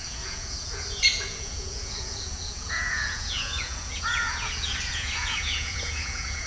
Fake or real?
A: fake